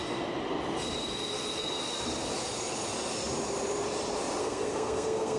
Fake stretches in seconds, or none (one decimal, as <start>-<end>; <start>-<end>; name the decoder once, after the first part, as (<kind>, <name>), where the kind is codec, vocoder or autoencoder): 4.4-5.4 (codec, SNAC)